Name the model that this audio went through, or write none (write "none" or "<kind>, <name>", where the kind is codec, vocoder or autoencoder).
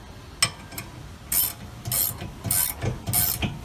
none